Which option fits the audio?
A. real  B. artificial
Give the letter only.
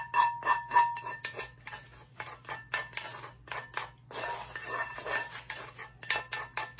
A